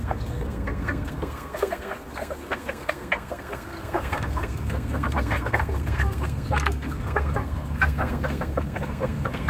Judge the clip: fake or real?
fake